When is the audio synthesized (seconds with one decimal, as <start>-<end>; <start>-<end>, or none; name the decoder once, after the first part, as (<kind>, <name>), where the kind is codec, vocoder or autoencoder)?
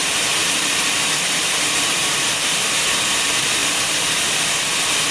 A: 0.0-5.1 (vocoder, BigVGAN v2)